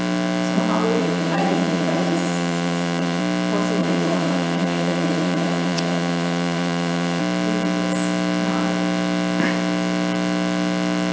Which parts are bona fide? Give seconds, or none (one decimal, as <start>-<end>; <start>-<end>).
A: 0.0-1.0; 3.2-3.8; 7.2-11.1

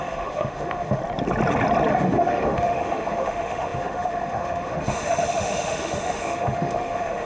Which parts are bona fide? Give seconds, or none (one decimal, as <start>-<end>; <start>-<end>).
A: 1.0-1.9

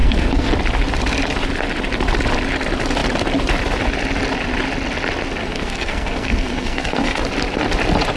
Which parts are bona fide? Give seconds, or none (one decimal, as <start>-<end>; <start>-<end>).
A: 0.5-5.4; 7.2-8.2

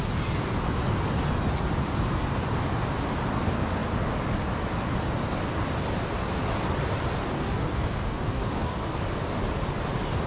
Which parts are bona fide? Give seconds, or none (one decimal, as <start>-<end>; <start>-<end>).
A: 0.0-7.2; 9.0-10.3